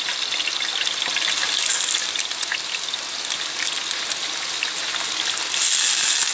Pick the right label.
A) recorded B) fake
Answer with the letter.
A